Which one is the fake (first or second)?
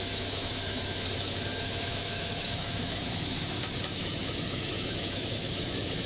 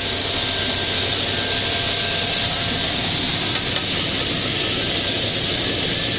first